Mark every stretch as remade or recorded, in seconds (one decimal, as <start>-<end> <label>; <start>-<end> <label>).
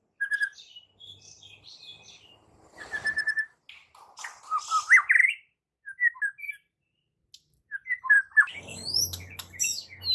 0.0-8.7 recorded; 8.7-10.1 remade